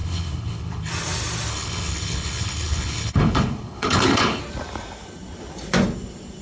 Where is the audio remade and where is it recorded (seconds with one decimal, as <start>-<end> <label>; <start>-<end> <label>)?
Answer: 0.0-0.9 remade; 0.9-1.5 recorded; 1.5-4.4 remade; 4.4-6.4 recorded